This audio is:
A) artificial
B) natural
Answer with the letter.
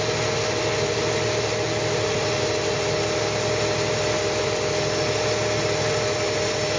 B